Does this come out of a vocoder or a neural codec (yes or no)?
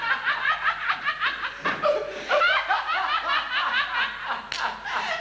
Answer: no